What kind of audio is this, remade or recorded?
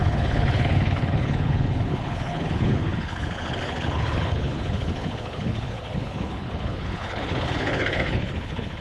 remade